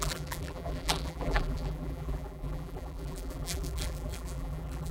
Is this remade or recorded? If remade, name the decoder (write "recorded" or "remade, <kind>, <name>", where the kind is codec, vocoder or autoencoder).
remade, vocoder, BigVGAN v2